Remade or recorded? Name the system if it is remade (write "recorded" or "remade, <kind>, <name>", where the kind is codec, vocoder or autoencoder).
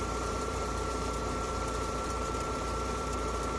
remade, vocoder, BigVGAN v2